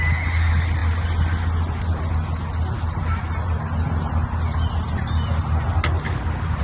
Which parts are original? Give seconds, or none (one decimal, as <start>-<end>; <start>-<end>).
0.0-6.6